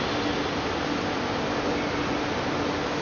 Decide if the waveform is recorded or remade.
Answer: recorded